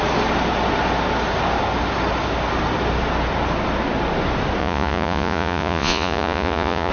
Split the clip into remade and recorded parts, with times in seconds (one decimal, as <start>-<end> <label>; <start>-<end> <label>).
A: 0.0-4.6 recorded; 4.6-6.9 remade